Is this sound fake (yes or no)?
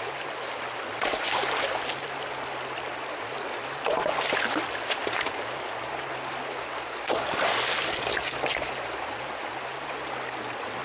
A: no